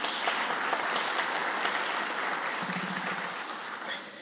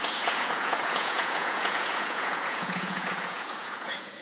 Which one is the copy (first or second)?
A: second